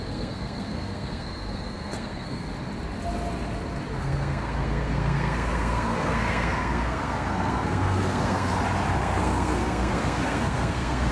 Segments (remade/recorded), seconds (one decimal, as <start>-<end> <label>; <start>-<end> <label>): 0.0-2.5 remade; 2.5-4.0 recorded; 4.0-8.5 remade; 8.5-9.0 recorded; 9.0-11.1 remade